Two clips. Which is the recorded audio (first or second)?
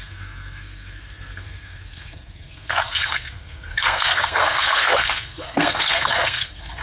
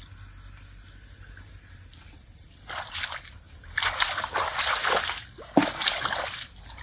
second